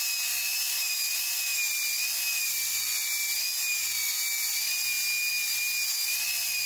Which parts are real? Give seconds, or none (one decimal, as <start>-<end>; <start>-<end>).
0.0-6.7